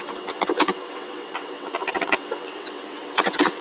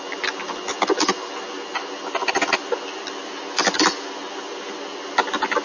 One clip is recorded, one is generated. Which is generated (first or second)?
first